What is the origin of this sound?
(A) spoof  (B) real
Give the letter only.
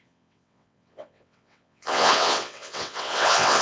A